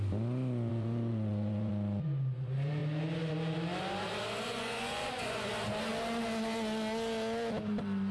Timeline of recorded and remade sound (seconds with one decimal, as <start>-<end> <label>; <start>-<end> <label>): 0.0-0.7 recorded; 0.7-1.7 remade; 1.7-4.5 recorded; 4.5-5.5 remade; 5.5-8.1 recorded